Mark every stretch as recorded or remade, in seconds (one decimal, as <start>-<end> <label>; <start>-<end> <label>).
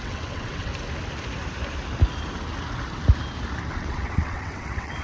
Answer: 0.0-0.7 remade; 0.7-3.7 recorded; 3.7-5.0 remade